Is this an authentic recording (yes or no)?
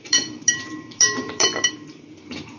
no